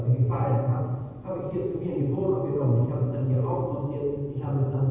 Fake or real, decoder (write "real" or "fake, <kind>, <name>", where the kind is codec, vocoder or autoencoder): fake, vocoder, Vocos